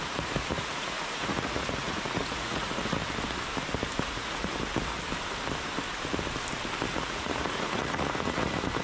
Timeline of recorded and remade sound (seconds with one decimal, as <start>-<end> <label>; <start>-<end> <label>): 0.0-3.0 remade; 3.0-4.0 recorded; 4.0-4.5 remade; 4.5-6.9 recorded; 6.9-8.8 remade